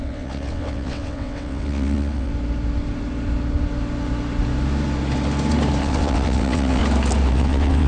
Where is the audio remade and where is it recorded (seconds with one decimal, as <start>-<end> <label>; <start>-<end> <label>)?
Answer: 0.0-2.3 remade; 2.3-5.8 recorded; 5.8-6.8 remade; 6.8-7.3 recorded; 7.3-7.9 remade